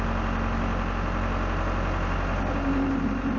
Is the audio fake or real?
real